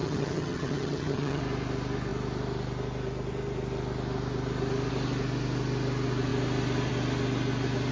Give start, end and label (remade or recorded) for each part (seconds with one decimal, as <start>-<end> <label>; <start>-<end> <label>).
0.0-1.4 remade; 1.4-7.9 recorded